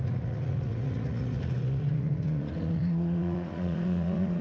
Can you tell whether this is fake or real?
fake